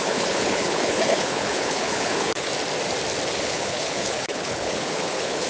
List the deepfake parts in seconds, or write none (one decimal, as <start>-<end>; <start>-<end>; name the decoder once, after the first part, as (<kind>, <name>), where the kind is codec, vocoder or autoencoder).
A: 0.0-2.5 (codec, HILCodec); 3.3-5.5